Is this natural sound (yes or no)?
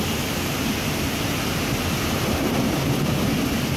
yes